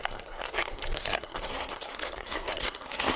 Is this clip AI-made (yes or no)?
yes